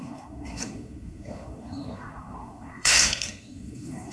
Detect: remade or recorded remade